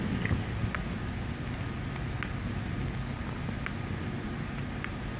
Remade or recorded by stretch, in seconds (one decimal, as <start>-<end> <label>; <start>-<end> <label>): 0.0-5.2 recorded